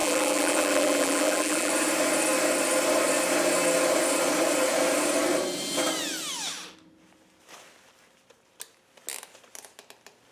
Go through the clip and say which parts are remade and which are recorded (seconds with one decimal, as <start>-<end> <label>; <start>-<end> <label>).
0.0-1.7 remade; 1.7-10.3 recorded